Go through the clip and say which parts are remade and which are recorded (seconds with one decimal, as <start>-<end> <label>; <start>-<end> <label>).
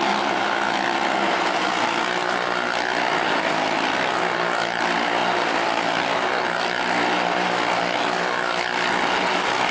0.0-9.7 recorded